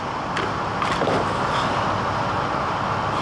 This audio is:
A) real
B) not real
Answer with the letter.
A